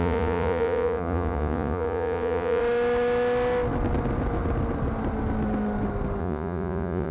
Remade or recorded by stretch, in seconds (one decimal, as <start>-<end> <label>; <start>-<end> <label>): 0.0-2.6 remade; 2.6-6.2 recorded; 6.2-7.1 remade